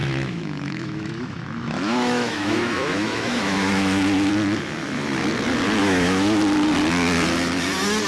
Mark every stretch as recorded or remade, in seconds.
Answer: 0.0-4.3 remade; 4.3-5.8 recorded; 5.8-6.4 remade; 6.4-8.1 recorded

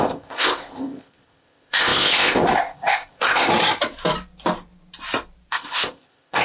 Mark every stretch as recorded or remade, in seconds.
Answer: 0.0-3.5 remade; 3.5-5.5 recorded; 5.5-6.4 remade

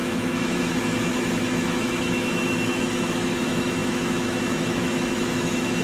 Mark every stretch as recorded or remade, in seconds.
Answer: 0.0-5.8 remade

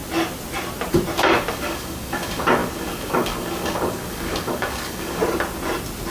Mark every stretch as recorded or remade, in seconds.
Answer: 0.0-1.5 recorded; 1.5-5.2 remade; 5.2-6.1 recorded